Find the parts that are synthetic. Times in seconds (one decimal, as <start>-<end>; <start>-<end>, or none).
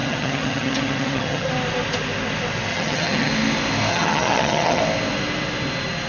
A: 0.0-1.5; 2.7-3.3; 3.9-4.8